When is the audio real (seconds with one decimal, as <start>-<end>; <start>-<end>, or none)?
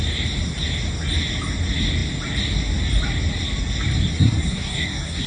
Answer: 0.0-4.1